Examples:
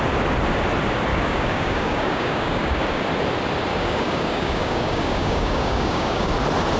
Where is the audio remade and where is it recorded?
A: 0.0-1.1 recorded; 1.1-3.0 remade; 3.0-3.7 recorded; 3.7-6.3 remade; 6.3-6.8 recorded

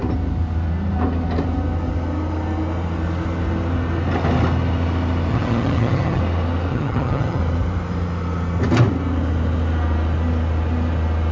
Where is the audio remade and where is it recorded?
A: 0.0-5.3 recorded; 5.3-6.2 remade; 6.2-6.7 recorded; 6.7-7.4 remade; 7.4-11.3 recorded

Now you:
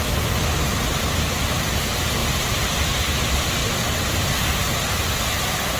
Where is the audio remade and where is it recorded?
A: 0.0-2.2 recorded; 2.2-3.2 remade; 3.2-5.8 recorded